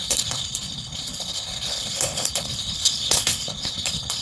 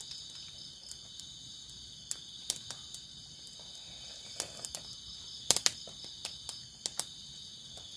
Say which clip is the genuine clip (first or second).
second